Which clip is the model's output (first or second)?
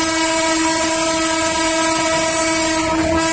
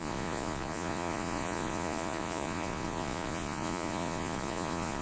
second